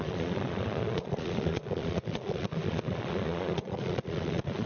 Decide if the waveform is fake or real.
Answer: fake